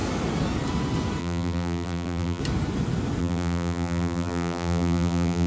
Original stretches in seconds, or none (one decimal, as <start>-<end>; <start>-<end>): 0.0-1.2; 2.4-3.2